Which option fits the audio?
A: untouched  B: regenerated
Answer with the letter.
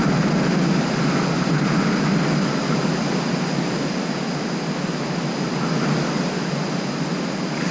A